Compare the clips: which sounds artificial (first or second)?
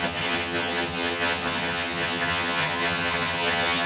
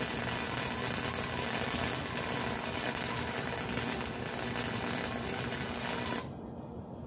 first